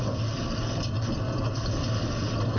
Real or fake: real